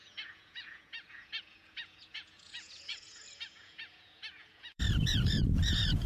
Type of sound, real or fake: fake